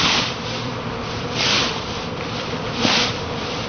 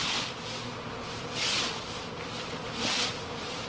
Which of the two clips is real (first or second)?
second